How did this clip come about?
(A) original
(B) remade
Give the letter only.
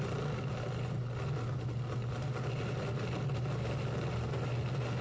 A